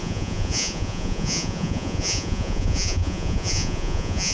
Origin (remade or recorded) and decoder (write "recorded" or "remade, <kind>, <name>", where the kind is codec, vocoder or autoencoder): remade, vocoder, Vocos